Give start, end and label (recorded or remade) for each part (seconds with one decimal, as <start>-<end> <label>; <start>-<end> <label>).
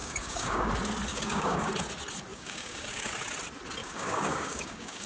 0.0-0.7 remade; 0.7-1.1 recorded; 1.1-1.7 remade; 1.7-2.3 recorded; 2.3-3.1 remade; 3.1-3.8 recorded; 3.8-5.1 remade